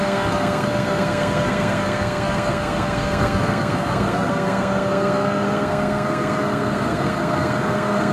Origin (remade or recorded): remade